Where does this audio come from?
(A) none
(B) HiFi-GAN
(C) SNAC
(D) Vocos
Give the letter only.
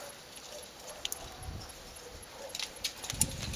A